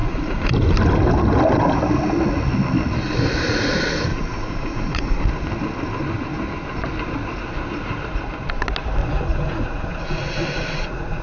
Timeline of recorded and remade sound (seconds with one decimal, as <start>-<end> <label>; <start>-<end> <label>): 0.0-0.5 remade; 0.5-4.1 recorded; 4.1-5.2 remade; 5.2-9.0 recorded; 9.0-11.2 remade